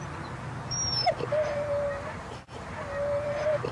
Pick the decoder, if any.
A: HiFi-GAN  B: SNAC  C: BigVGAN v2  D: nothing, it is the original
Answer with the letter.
D